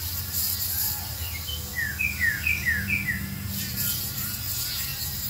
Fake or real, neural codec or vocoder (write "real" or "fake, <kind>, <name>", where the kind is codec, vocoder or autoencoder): real